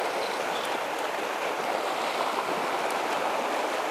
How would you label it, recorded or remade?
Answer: recorded